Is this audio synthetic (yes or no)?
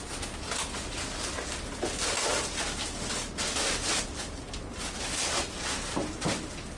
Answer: no